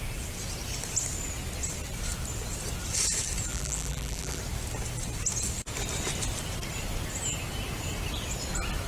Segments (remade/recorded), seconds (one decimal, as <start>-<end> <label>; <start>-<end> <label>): 0.0-3.5 recorded; 3.5-4.4 remade; 4.4-8.9 recorded